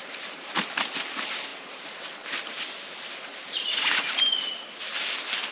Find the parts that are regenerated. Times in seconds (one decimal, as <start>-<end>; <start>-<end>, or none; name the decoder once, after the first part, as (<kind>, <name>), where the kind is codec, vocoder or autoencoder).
0.0-0.6 (vocoder, BigVGAN v2)